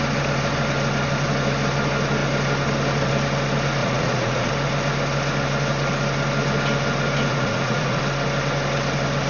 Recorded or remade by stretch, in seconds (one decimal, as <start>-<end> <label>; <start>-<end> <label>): 0.0-3.8 recorded; 3.8-4.5 remade; 4.5-7.3 recorded; 7.3-8.0 remade; 8.0-9.3 recorded